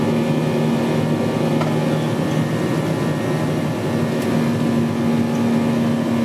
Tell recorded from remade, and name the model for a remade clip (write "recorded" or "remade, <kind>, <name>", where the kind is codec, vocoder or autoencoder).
recorded